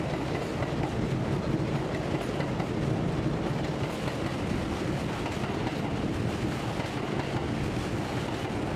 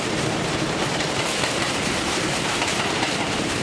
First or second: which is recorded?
first